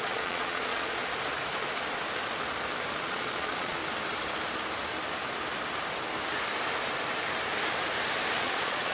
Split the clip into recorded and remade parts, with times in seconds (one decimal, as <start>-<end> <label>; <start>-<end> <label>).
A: 0.0-1.0 remade; 1.0-3.0 recorded; 3.0-3.8 remade; 3.8-8.4 recorded; 8.4-8.9 remade